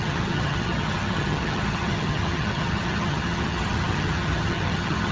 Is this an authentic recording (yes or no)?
no